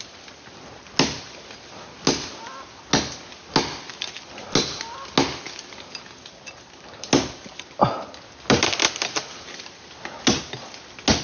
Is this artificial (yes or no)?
no